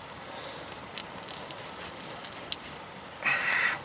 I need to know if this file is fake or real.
real